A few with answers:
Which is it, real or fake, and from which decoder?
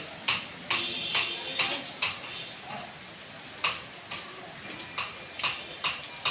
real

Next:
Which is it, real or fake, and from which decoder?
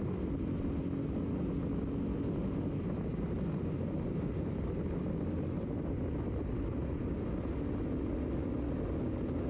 real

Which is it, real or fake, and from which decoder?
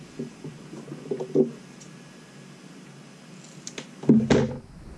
real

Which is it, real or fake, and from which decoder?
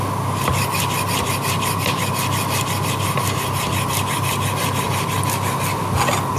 real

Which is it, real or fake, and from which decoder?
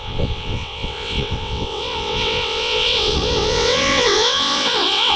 fake, vocoder, WaveNeXt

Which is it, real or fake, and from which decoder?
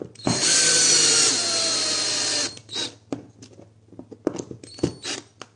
real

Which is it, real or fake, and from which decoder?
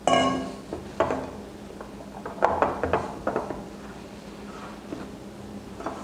real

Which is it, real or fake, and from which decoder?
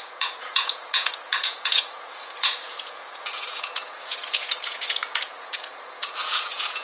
fake, vocoder, Vocos